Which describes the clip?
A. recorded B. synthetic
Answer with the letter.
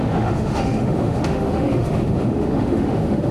B